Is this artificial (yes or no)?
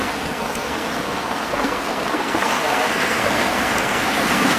yes